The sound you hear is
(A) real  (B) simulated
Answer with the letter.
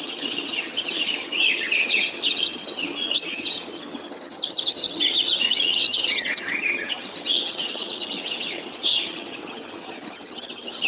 B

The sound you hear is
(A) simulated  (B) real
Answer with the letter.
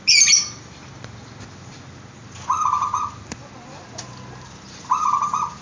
B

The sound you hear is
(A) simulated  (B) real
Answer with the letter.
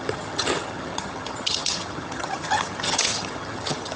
A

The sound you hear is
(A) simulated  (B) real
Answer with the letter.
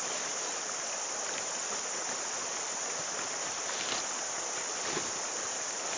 B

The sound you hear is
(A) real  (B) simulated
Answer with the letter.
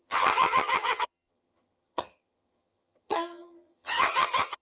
B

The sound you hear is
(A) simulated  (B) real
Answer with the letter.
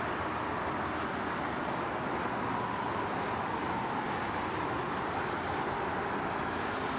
B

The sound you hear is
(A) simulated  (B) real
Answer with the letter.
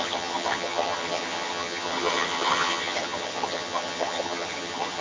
A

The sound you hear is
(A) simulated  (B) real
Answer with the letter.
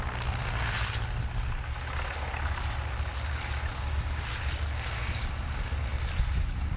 B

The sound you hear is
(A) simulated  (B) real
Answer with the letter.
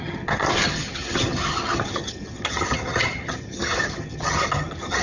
A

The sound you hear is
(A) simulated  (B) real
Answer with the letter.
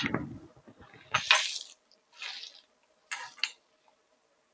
B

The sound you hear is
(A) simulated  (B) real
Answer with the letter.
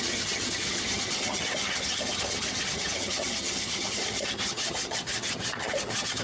A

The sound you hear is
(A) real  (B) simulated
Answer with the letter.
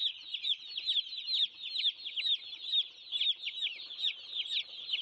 A